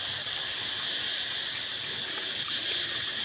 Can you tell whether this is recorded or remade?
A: recorded